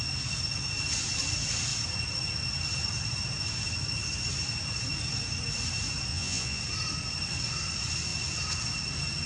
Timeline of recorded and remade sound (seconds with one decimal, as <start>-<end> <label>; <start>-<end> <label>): 0.0-6.1 recorded; 6.1-6.6 remade; 6.6-9.3 recorded